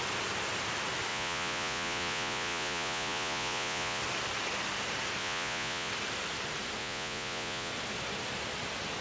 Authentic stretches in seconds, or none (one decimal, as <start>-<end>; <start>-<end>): 0.0-1.1; 4.0-5.2; 5.9-6.8; 7.7-9.0